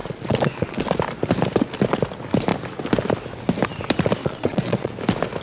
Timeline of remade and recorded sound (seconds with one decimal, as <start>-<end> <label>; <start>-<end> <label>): 0.0-0.8 remade; 0.8-4.2 recorded; 4.2-4.9 remade; 4.9-5.4 recorded